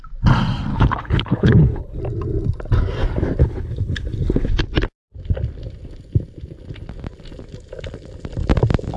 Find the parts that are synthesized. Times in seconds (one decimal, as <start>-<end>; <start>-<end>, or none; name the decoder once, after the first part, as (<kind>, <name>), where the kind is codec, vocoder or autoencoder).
0.7-2.0 (codec, HILCodec); 3.4-4.6